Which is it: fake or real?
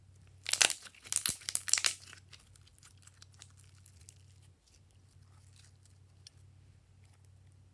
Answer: real